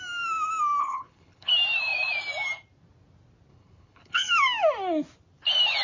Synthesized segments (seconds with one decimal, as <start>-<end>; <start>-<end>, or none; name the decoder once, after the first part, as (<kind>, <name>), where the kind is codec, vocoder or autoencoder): 0.8-1.5 (codec, HILCodec); 3.5-4.3